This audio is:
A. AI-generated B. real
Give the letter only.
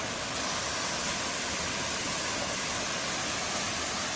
B